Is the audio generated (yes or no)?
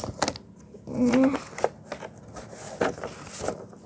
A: no